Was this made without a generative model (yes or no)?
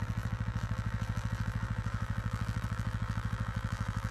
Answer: no